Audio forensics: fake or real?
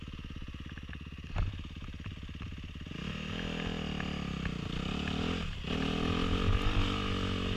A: real